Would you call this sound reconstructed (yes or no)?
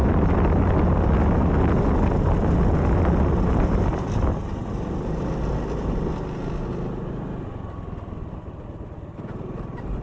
no